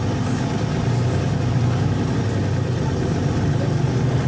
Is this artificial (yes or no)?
no